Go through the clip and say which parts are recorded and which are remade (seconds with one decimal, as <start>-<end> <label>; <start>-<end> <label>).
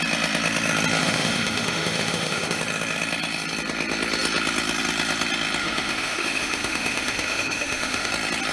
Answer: 0.0-1.0 recorded; 1.0-2.6 remade; 2.6-5.6 recorded; 5.6-8.1 remade; 8.1-8.5 recorded